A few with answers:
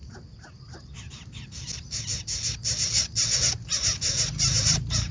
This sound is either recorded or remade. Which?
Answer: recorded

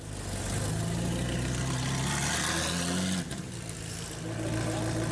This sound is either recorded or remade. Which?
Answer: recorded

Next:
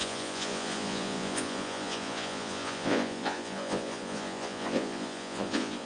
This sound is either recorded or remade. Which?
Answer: remade